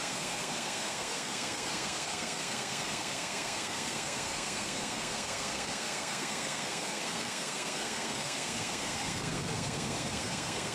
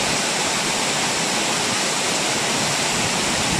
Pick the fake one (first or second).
first